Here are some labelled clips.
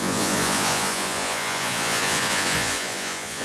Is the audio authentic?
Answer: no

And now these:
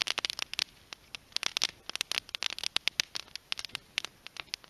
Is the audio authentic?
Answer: yes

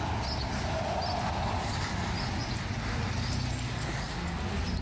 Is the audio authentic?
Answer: yes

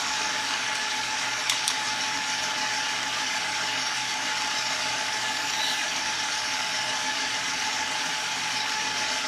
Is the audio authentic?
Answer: no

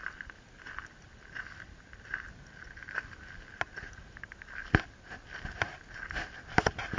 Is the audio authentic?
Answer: yes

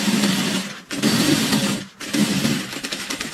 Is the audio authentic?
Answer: no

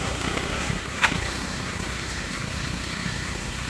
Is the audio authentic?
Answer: no